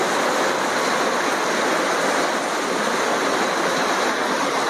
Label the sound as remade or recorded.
recorded